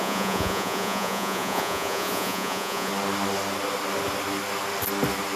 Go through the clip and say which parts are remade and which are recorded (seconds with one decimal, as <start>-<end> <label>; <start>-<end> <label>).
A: 0.0-2.9 remade; 2.9-5.4 recorded